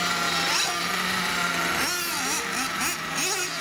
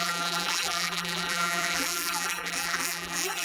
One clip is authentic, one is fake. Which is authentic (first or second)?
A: first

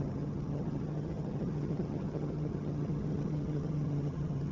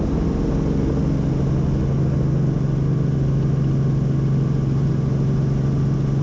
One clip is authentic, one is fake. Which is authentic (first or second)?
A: second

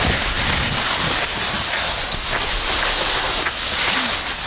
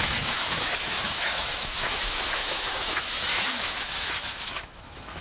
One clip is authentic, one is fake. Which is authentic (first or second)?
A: first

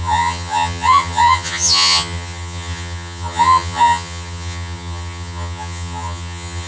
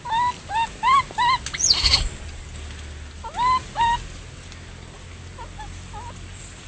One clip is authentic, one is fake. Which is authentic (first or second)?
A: second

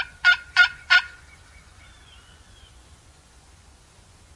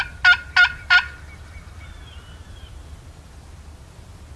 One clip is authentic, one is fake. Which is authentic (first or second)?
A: second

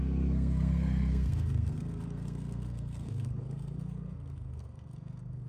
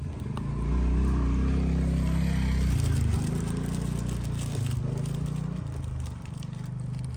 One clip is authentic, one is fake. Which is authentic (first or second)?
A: second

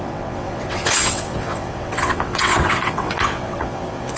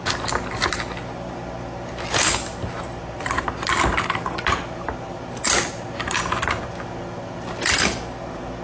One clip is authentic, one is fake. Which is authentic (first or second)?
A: second